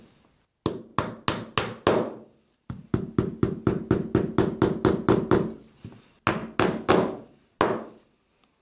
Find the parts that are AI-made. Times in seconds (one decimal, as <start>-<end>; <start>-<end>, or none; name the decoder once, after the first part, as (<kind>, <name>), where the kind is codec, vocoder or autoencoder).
none